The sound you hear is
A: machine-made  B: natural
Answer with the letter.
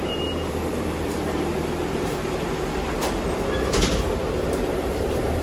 A